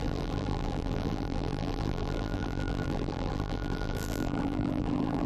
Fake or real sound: fake